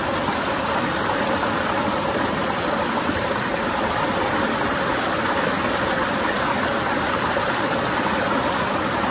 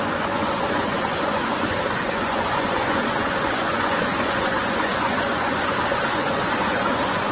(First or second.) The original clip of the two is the first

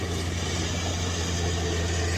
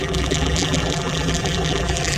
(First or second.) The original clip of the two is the first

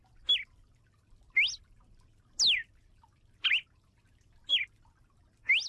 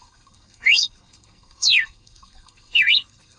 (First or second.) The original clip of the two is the first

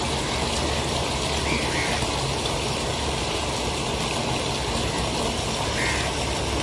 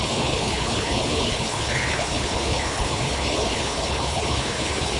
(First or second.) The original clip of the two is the first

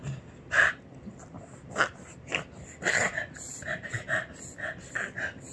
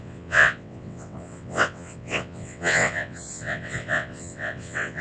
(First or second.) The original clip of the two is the first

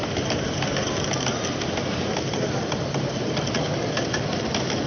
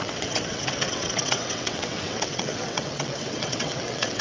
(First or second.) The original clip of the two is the first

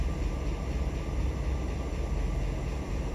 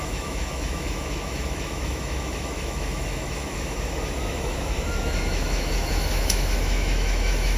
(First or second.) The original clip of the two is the first